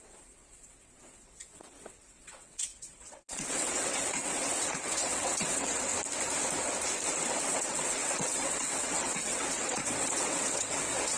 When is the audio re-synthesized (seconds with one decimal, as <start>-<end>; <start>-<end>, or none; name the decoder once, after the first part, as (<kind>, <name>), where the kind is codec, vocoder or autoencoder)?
0.0-5.9 (vocoder, WaveNeXt); 7.4-11.2